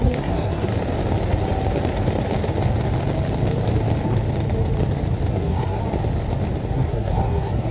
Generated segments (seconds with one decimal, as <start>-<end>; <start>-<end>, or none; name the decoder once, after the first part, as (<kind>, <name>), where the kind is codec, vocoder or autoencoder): 0.0-0.7 (codec, SNAC); 5.3-5.8; 6.7-7.7